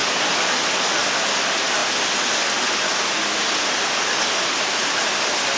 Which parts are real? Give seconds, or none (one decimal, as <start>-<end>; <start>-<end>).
0.0-5.6